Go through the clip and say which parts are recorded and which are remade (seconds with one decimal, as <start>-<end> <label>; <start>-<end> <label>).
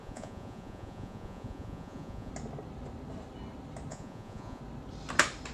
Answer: 0.0-2.3 remade; 2.3-3.9 recorded; 3.9-4.6 remade; 4.6-5.5 recorded